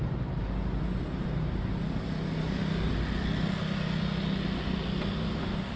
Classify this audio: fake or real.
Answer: real